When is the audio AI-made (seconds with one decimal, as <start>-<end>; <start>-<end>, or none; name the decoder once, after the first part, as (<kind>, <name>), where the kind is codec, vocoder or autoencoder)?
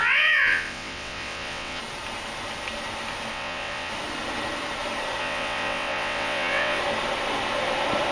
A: 0.0-1.8 (vocoder, WaveNeXt); 3.3-3.9; 5.2-6.8